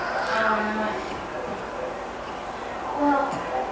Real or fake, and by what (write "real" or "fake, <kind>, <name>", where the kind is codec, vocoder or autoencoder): real